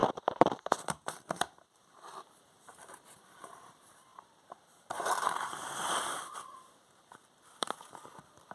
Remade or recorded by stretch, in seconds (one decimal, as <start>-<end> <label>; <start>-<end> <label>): 0.0-8.5 remade